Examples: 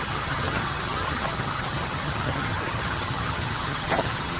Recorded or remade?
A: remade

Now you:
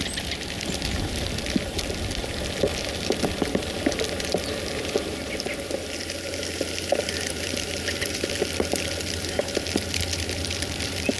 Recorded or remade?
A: remade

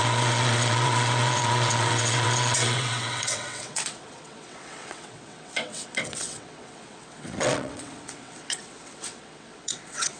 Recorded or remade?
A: remade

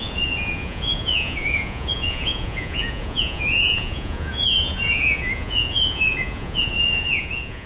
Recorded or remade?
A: remade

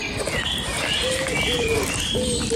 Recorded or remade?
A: recorded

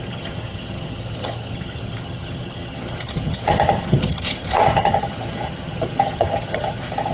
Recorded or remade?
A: remade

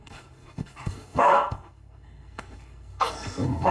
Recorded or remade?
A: remade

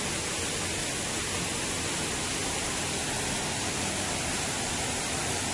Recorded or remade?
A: recorded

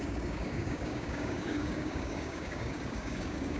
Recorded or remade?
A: remade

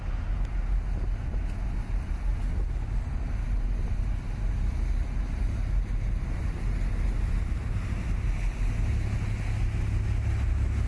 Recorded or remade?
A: recorded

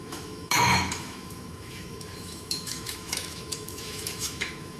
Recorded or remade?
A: remade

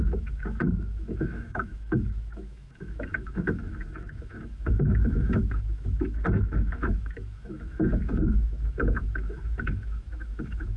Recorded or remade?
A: remade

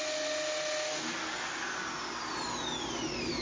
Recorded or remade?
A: recorded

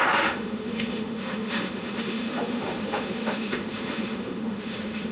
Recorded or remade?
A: remade